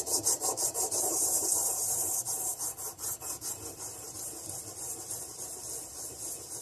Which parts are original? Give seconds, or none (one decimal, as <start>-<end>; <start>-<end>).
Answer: 0.0-0.6; 4.6-6.6